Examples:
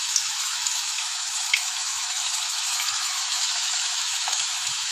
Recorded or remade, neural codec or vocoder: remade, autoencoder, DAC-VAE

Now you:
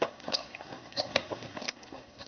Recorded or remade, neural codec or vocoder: remade, codec, SNAC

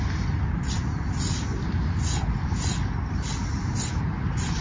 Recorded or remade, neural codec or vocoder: recorded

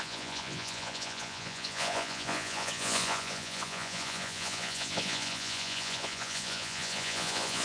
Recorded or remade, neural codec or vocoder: remade, vocoder, Vocos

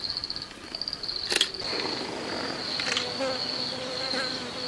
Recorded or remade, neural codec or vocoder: recorded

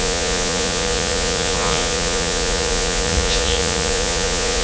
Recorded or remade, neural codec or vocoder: remade, vocoder, Vocos